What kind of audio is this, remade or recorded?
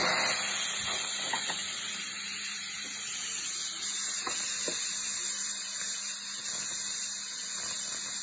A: recorded